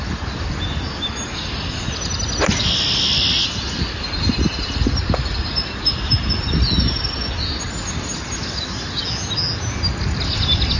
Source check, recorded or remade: recorded